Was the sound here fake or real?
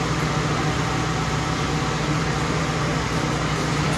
real